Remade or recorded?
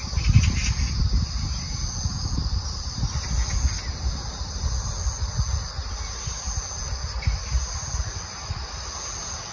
recorded